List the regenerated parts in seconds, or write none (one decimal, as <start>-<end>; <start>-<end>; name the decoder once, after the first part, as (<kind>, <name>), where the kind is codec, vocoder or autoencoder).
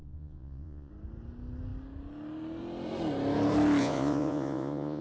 0.0-0.9 (vocoder, Vocos); 3.8-5.0